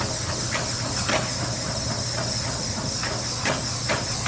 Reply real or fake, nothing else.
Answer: real